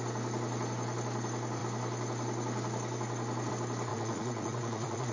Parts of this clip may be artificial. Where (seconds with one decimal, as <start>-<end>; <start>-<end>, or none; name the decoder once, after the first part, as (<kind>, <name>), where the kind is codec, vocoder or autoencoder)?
3.9-5.1 (vocoder, Vocos)